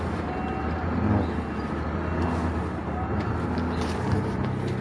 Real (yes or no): yes